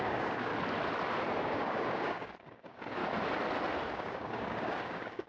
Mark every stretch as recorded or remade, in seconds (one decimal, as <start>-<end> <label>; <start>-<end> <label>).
0.0-0.5 remade; 0.5-1.4 recorded; 1.4-3.0 remade; 3.0-3.9 recorded; 3.9-5.3 remade